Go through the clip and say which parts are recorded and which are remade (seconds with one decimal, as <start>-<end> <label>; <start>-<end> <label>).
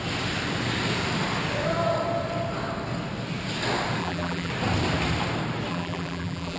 0.0-4.0 recorded; 4.0-4.5 remade; 4.5-5.7 recorded; 5.7-6.6 remade